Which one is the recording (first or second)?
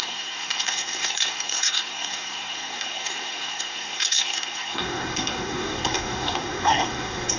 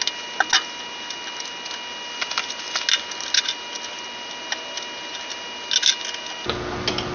second